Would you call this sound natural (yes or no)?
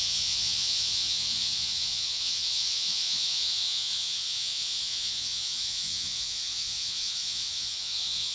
no